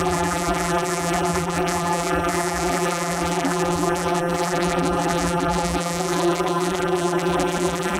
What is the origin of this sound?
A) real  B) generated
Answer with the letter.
B